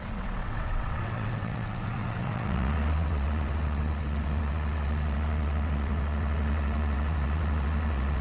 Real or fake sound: fake